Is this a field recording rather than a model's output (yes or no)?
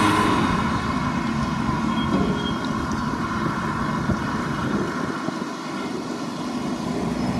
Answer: yes